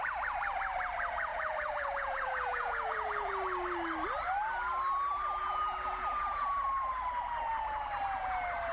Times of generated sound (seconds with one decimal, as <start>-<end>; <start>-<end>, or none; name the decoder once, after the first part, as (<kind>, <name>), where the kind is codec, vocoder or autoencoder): 1.3-3.3 (vocoder, Vocos); 5.4-6.9

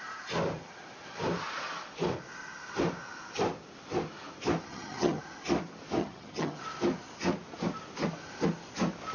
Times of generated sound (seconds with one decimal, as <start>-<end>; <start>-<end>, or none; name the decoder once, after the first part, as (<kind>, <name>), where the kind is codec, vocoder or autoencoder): 4.7-5.2 (vocoder, HiFi-GAN); 6.0-6.6